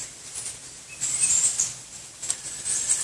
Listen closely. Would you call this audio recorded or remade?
recorded